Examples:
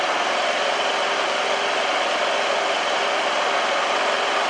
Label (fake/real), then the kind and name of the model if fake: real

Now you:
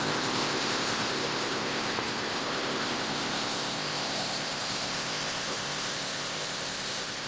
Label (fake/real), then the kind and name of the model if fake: fake, codec, ZipCodec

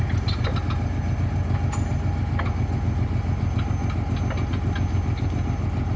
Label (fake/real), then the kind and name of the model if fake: real